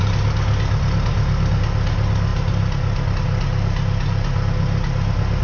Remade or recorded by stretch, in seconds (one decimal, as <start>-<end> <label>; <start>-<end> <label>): 0.0-5.4 recorded